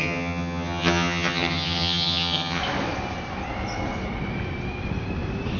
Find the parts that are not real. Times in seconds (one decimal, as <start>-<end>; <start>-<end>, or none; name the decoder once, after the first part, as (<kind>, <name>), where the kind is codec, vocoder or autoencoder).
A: 0.0-2.6 (vocoder, HiFi-GAN)